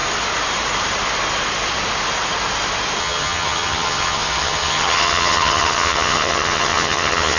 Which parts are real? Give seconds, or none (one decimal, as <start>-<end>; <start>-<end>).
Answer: 0.0-3.0